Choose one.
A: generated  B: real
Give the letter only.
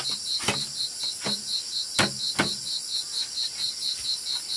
B